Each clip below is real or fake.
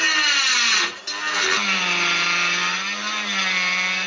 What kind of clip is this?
real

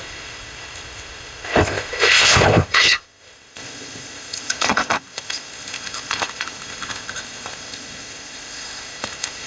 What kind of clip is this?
fake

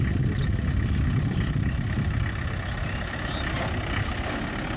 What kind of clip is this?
real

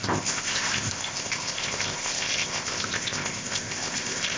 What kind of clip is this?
fake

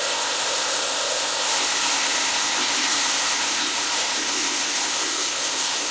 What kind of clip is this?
fake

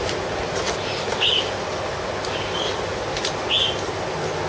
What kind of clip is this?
real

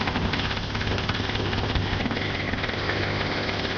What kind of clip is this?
fake